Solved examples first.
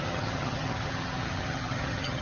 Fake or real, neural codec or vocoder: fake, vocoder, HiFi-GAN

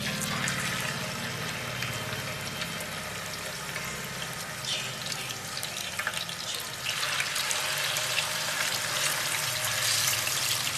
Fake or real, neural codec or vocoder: real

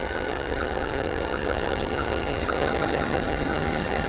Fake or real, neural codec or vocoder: fake, vocoder, HiFi-GAN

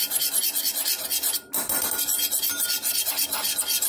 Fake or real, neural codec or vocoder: real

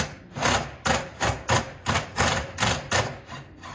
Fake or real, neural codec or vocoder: real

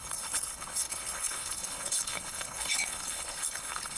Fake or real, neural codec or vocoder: fake, codec, HILCodec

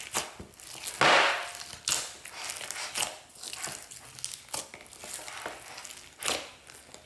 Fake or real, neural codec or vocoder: real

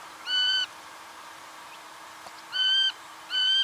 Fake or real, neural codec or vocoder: fake, vocoder, BigVGAN v2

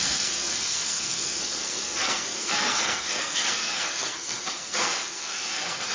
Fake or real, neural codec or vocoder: fake, codec, SNAC